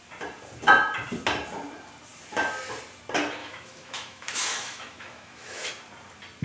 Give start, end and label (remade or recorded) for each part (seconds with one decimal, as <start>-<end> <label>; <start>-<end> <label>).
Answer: 0.0-3.4 recorded; 3.4-5.7 remade; 5.7-6.4 recorded